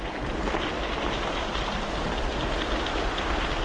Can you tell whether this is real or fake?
real